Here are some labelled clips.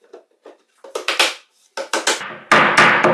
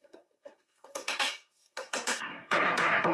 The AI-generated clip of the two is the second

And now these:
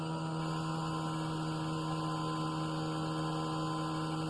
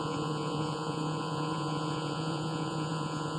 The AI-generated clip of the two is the second